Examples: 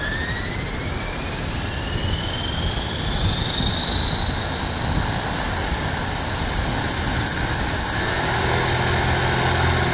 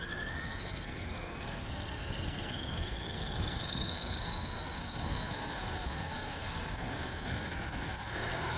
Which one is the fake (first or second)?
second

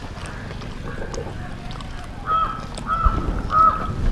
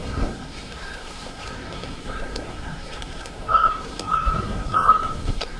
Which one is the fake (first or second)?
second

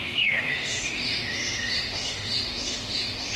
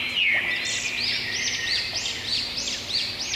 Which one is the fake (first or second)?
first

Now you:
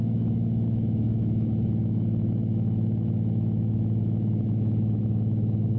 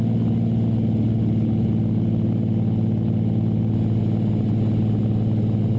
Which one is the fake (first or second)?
first